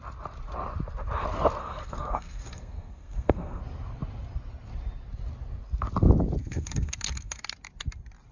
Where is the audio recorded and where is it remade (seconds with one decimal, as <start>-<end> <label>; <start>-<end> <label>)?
0.0-1.6 recorded; 1.6-3.6 remade; 3.6-6.4 recorded; 6.4-7.4 remade; 7.4-8.3 recorded